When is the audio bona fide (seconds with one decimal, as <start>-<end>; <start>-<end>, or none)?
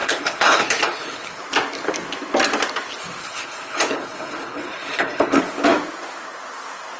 1.4-3.2; 5.4-7.0